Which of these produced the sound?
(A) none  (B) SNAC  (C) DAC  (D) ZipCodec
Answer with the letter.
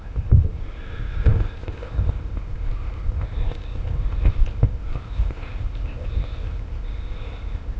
D